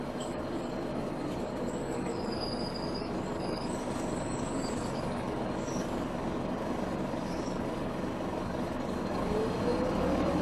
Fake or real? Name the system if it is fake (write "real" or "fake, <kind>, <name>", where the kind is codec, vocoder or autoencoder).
fake, codec, DAC